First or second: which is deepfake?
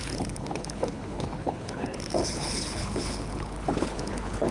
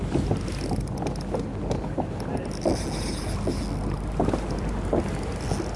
first